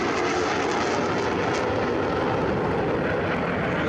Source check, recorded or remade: recorded